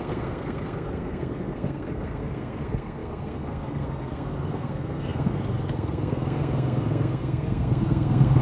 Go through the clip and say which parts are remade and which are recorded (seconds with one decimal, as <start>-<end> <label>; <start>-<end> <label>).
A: 0.0-8.4 remade